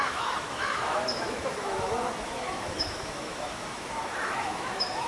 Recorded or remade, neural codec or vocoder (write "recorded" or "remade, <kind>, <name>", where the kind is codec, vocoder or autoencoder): remade, autoencoder, DAC-VAE